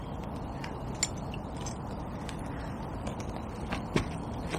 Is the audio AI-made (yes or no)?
no